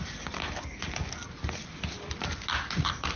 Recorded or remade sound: recorded